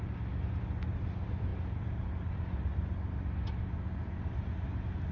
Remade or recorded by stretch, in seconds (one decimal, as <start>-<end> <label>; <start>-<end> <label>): 0.0-5.1 recorded